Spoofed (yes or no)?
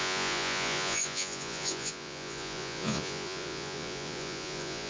yes